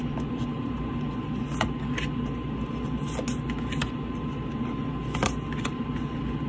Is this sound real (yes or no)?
yes